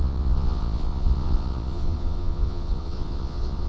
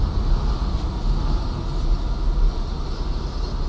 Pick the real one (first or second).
second